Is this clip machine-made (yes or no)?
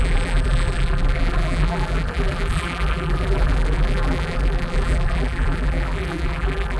yes